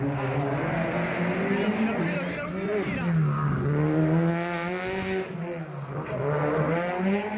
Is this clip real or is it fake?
real